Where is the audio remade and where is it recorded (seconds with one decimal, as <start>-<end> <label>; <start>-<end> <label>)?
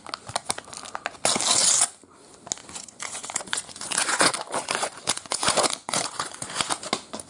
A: 0.0-2.6 recorded; 2.6-6.7 remade; 6.7-7.3 recorded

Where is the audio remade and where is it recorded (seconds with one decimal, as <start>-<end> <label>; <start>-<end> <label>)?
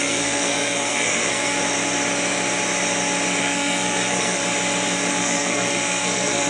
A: 0.0-1.6 remade; 1.6-3.4 recorded; 3.4-4.4 remade; 4.4-5.1 recorded; 5.1-6.5 remade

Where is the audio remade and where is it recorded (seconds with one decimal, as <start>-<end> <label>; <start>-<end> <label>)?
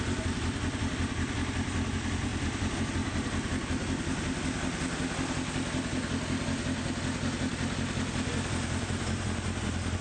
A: 0.0-2.3 recorded; 2.3-2.8 remade; 2.8-10.0 recorded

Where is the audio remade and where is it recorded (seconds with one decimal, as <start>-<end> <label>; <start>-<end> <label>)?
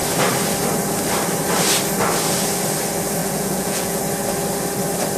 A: 0.0-3.2 recorded; 3.2-4.0 remade; 4.0-5.2 recorded